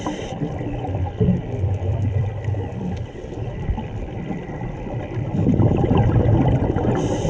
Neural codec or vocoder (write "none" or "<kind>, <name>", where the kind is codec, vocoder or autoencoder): vocoder, BigVGAN v2